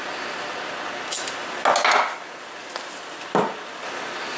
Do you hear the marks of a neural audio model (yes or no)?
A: no